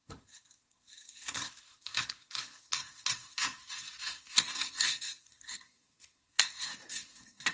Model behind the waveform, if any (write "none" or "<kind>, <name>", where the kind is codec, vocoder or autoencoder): codec, SNAC